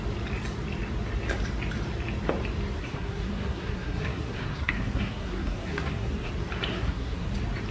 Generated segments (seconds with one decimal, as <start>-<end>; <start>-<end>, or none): 2.8-6.3; 6.7-7.3